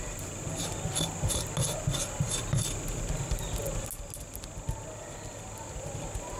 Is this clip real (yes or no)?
yes